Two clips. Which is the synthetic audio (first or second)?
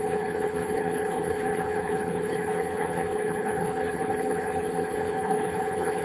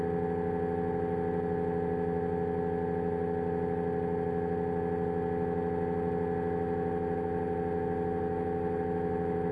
first